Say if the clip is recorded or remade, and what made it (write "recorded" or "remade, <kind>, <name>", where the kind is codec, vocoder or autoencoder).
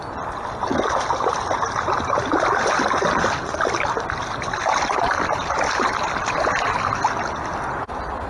recorded